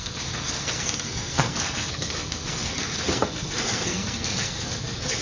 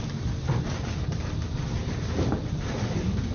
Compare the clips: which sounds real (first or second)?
second